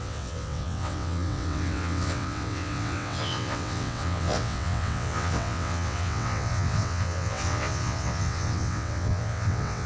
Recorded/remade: remade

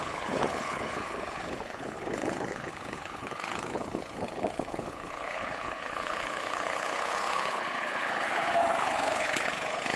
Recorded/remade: remade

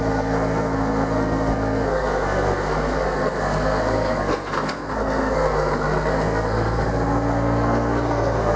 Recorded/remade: remade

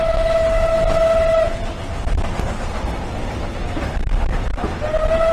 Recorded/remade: recorded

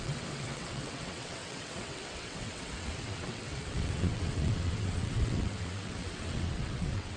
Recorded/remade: remade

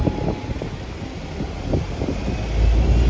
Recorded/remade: recorded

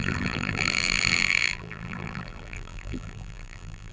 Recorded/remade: remade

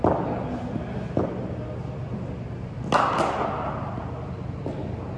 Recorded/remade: recorded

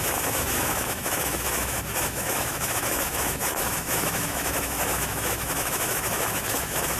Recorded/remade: remade